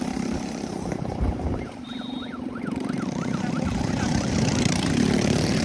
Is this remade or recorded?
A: remade